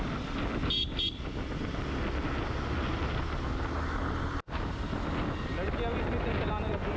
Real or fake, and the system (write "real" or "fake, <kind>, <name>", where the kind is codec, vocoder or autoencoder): real